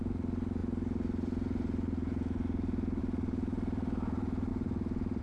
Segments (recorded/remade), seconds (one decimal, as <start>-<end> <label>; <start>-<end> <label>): 0.0-5.2 recorded

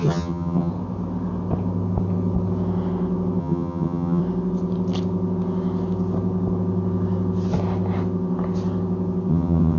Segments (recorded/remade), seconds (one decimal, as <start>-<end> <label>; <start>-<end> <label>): 0.0-0.7 remade; 0.7-3.4 recorded; 3.4-4.2 remade; 4.2-9.3 recorded; 9.3-9.8 remade

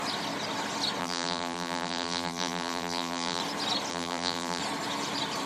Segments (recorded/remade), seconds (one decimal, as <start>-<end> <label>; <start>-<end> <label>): 0.0-1.0 recorded; 1.0-3.4 remade; 3.4-3.9 recorded; 3.9-4.6 remade; 4.6-5.5 recorded

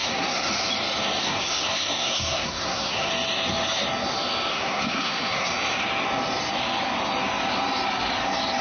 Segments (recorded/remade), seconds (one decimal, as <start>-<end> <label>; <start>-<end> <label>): 0.0-0.5 remade; 0.5-1.2 recorded; 1.2-3.1 remade; 3.1-4.5 recorded; 4.5-5.5 remade; 5.5-8.6 recorded

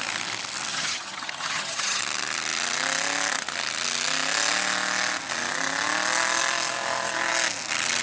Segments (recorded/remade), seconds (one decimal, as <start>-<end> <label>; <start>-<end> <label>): 0.0-0.7 recorded; 0.7-2.0 remade; 2.0-8.0 recorded